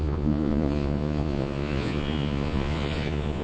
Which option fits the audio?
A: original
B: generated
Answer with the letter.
B